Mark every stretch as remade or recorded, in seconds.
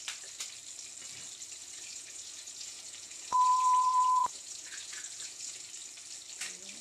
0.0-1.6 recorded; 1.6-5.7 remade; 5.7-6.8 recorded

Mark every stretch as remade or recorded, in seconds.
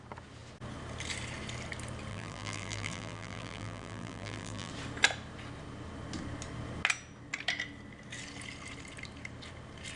0.0-2.1 recorded; 2.1-4.7 remade; 4.7-10.0 recorded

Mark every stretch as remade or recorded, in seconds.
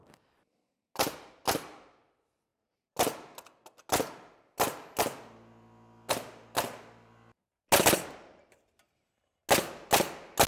0.0-10.5 recorded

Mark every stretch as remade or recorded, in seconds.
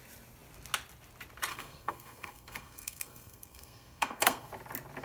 0.0-1.5 recorded; 1.5-4.5 remade; 4.5-5.0 recorded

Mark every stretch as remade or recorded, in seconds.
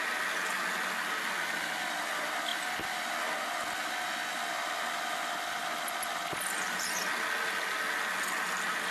0.0-8.9 recorded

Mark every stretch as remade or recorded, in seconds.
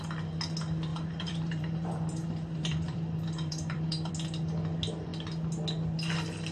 0.0-0.9 recorded; 0.9-4.1 remade; 4.1-6.5 recorded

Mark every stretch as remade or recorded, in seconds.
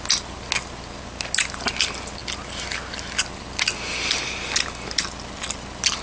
0.0-6.0 recorded